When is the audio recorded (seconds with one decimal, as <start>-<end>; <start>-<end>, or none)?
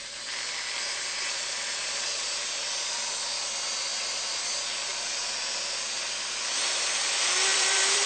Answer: 4.9-5.6